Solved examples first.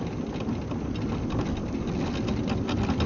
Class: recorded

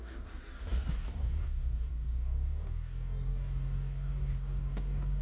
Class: remade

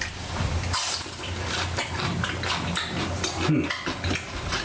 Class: recorded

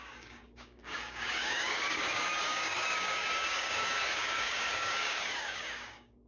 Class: remade